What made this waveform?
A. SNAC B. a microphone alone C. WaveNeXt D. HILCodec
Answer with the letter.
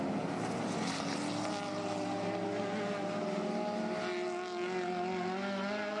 B